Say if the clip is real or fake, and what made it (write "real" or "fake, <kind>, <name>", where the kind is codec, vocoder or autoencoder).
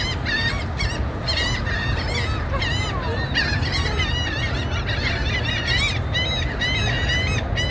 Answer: real